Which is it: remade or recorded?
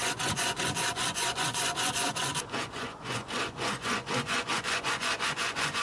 remade